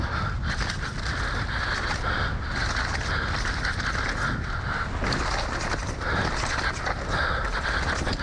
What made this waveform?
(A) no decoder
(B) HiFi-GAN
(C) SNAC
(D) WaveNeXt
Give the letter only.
A